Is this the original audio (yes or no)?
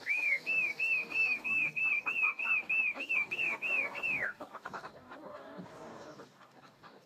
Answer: no